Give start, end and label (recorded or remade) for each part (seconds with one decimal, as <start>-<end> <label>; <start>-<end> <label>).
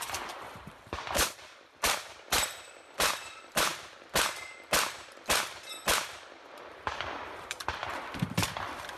0.0-3.7 remade; 3.7-6.9 recorded; 6.9-7.8 remade; 7.8-8.4 recorded; 8.4-9.0 remade